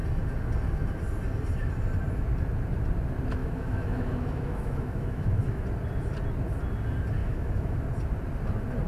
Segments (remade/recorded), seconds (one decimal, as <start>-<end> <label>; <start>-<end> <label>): 0.0-3.4 recorded; 3.4-5.6 remade; 5.6-7.2 recorded; 7.2-7.8 remade; 7.8-8.9 recorded